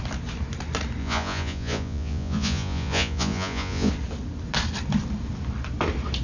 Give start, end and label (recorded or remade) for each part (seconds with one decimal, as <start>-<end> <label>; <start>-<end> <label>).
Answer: 0.0-1.0 recorded; 1.0-3.9 remade; 3.9-6.2 recorded